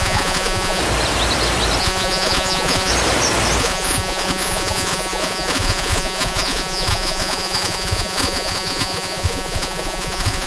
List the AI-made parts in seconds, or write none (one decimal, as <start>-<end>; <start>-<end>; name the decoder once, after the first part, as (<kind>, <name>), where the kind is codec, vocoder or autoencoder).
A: 0.0-0.8 (vocoder, Vocos); 1.8-2.9; 3.6-10.5

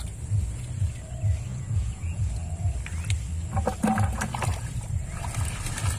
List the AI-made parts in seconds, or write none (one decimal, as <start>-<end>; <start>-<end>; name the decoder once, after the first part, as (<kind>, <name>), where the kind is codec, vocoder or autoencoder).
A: 1.5-2.5 (vocoder, Vocos)

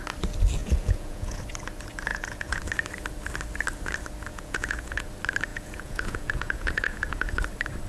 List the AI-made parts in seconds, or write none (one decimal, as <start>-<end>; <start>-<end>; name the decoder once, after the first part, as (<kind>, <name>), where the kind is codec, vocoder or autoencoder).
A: 0.6-1.4 (vocoder, Vocos); 2.1-2.6; 4.3-5.1; 5.5-7.3

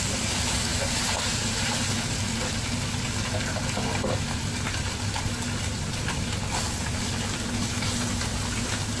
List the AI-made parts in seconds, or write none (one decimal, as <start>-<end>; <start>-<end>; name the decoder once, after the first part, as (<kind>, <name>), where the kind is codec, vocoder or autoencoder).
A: none

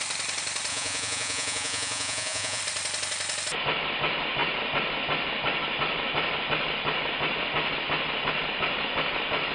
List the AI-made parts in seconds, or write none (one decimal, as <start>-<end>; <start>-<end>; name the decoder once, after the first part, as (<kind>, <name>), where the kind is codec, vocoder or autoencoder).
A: 0.7-2.6 (vocoder, Vocos)